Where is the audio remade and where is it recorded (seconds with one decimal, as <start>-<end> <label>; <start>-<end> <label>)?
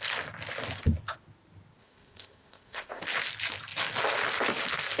0.0-1.8 recorded; 1.8-3.0 remade; 3.0-5.0 recorded